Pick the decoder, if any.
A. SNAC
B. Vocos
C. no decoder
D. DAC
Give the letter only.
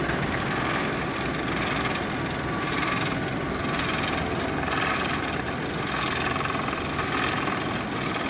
C